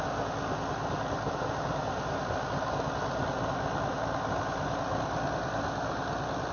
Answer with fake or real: real